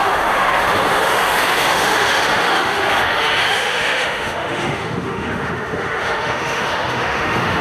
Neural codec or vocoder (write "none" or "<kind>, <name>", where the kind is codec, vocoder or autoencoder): autoencoder, DAC-VAE